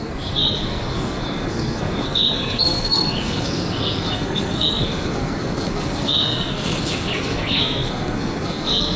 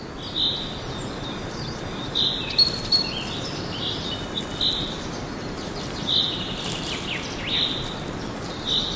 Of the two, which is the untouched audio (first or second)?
second